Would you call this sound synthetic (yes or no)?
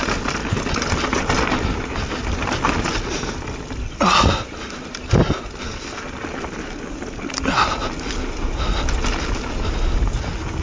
no